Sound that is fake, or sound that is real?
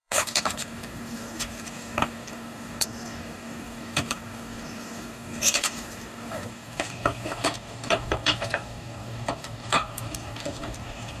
fake